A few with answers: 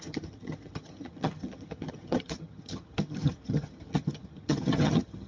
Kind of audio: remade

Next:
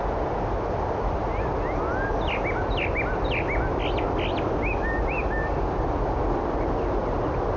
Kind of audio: recorded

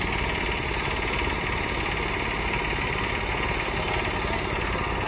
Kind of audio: recorded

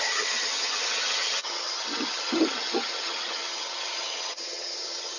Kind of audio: remade